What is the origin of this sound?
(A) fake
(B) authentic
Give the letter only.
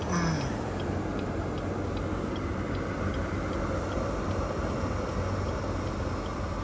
B